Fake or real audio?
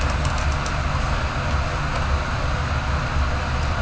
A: real